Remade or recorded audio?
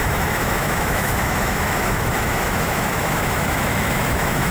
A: remade